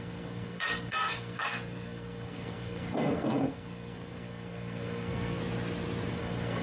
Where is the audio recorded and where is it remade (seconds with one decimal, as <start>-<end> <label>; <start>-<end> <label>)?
0.0-5.4 remade; 5.4-6.1 recorded; 6.1-6.6 remade

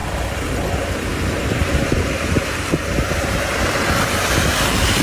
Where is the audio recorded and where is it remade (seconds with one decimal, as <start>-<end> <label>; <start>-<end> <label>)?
0.0-1.1 recorded; 1.1-4.1 remade; 4.1-5.0 recorded

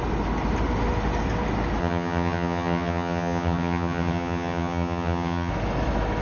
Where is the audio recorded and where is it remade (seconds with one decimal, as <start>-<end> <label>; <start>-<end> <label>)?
0.0-1.8 recorded; 1.8-5.5 remade; 5.5-6.2 recorded